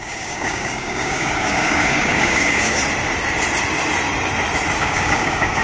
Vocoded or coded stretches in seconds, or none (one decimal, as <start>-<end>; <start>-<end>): 0.0-2.8; 4.8-5.6